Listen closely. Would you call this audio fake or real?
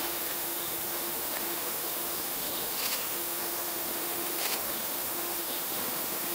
fake